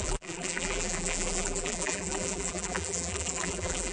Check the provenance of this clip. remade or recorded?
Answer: remade